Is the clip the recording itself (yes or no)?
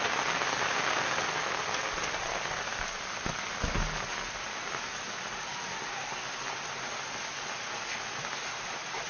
yes